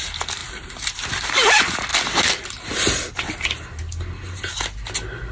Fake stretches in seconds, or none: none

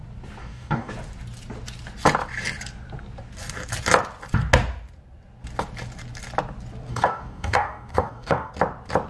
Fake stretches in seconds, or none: 0.4-0.9; 6.9-8.5